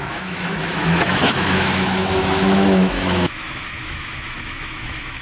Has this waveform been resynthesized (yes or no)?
yes